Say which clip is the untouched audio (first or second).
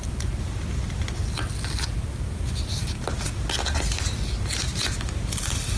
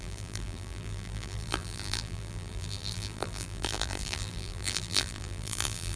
first